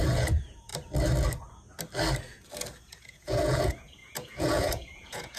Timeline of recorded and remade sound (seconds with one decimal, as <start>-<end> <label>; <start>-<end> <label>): 0.0-0.7 remade; 0.7-2.9 recorded; 2.9-5.4 remade